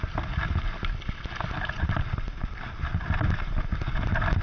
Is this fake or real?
real